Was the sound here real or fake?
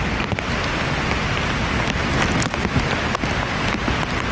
real